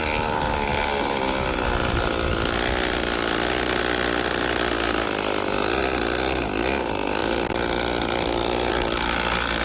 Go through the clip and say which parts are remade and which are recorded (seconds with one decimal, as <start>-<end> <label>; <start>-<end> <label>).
0.0-9.6 recorded